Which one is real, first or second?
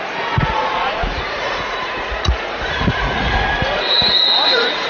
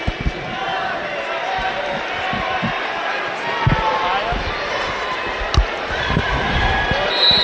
second